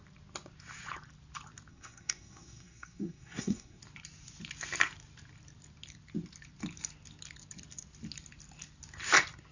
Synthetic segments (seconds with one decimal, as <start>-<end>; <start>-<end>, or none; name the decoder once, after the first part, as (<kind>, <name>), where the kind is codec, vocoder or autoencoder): 1.7-3.8 (codec, SNAC)